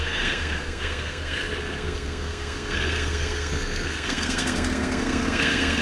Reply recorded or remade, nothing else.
remade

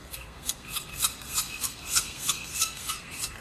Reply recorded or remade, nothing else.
remade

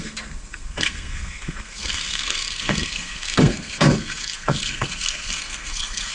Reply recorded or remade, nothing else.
remade